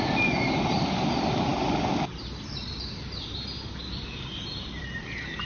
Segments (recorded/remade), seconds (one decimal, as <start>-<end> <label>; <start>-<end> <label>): 0.0-5.5 recorded